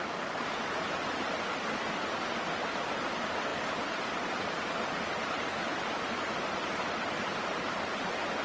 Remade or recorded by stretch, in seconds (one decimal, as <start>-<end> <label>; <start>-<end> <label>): 0.0-8.4 recorded